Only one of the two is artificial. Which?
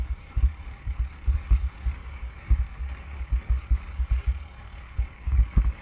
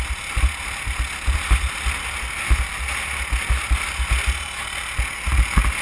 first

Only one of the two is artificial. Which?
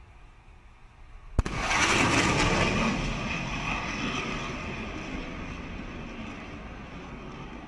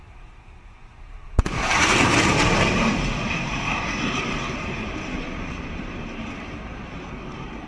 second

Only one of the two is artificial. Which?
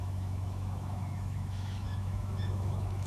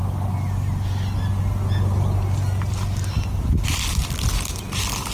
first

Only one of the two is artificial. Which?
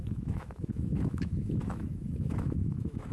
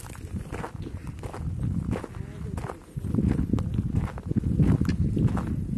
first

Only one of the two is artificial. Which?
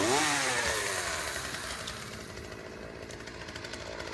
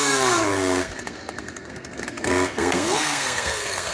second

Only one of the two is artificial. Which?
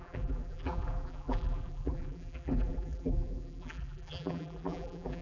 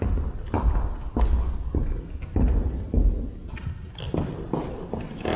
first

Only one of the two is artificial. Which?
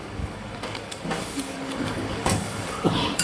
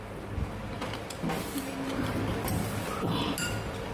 first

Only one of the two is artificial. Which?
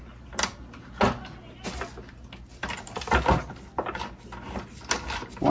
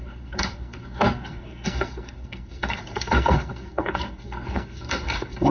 second